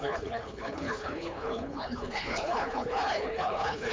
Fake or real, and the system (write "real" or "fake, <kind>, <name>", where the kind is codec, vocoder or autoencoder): fake, codec, HILCodec